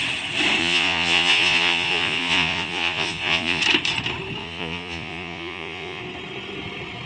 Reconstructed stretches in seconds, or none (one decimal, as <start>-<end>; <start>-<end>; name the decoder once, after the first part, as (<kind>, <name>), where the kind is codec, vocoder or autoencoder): 0.6-3.6 (vocoder, Vocos); 4.4-6.0